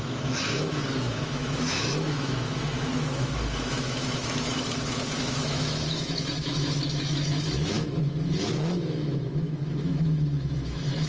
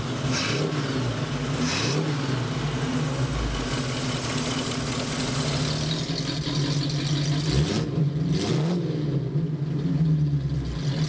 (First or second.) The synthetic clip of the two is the first